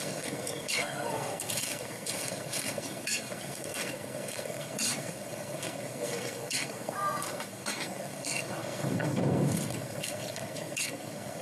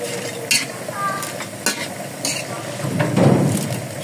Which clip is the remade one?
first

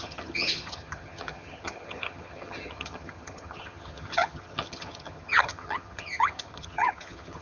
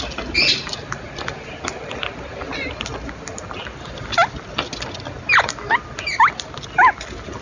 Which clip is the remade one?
first